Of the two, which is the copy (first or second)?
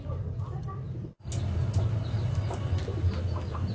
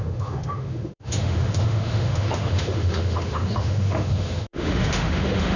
second